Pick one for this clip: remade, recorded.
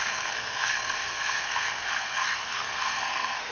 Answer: remade